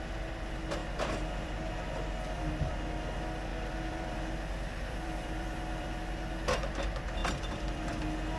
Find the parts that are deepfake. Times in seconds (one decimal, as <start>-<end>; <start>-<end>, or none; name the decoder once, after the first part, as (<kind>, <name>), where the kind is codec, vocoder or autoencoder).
0.8-2.7 (vocoder, BigVGAN v2); 3.5-6.0; 7.2-8.0